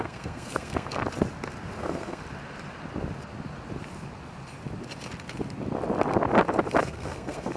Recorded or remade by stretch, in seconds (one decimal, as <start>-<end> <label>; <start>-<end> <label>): 0.0-1.0 remade; 1.0-1.8 recorded; 1.8-2.2 remade; 2.2-6.8 recorded; 6.8-7.6 remade